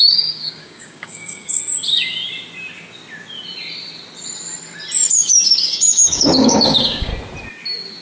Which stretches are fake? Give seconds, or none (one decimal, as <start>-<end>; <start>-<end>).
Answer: 0.0-1.6; 5.1-7.1

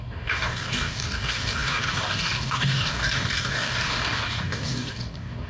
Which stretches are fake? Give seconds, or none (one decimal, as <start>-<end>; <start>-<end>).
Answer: 0.0-5.5

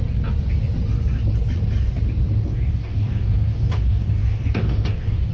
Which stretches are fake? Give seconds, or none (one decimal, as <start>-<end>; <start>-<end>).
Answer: 2.5-5.3

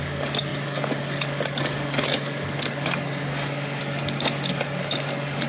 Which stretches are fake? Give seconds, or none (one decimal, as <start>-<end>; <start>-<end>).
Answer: 0.0-5.5

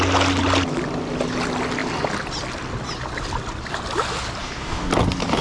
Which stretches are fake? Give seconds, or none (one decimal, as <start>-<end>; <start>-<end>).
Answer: 4.4-4.9